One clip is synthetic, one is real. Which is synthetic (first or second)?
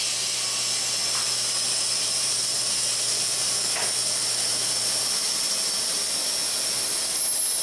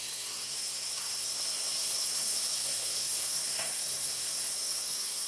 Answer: second